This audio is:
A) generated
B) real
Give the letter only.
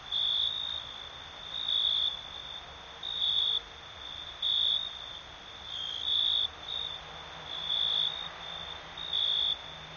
B